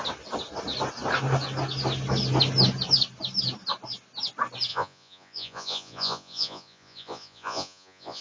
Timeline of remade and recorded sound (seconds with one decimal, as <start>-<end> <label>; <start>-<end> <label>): 0.0-4.7 recorded; 4.7-8.2 remade